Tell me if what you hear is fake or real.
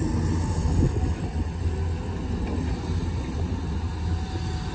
real